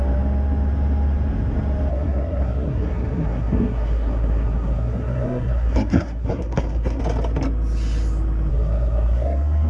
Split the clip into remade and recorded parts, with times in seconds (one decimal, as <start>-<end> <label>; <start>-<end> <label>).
0.0-1.9 recorded; 1.9-7.0 remade; 7.0-8.5 recorded; 8.5-9.7 remade